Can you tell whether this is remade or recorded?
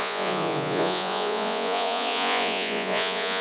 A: remade